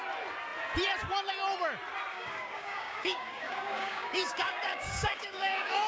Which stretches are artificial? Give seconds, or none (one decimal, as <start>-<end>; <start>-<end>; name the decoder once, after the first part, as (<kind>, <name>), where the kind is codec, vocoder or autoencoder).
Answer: 2.1-5.9 (codec, DAC)